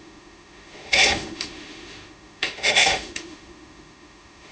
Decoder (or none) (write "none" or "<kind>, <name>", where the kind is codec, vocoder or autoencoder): autoencoder, DAC-VAE